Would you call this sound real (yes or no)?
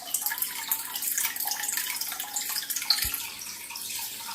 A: yes